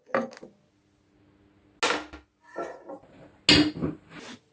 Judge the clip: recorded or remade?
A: recorded